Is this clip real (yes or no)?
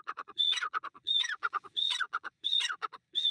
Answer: no